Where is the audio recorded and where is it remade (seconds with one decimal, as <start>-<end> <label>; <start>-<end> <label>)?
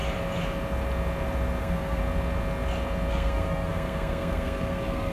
0.0-1.6 recorded; 1.6-2.0 remade; 2.0-3.1 recorded; 3.1-5.1 remade